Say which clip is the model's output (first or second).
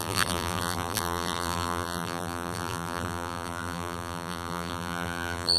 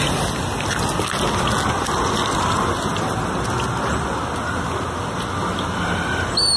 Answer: first